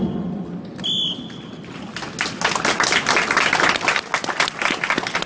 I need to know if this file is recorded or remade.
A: recorded